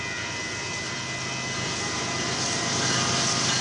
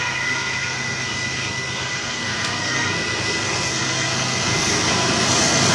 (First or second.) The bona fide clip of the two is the first